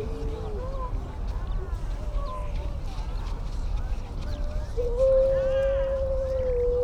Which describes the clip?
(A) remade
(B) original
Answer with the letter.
B